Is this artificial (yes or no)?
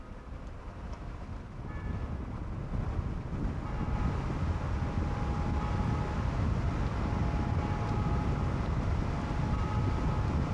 no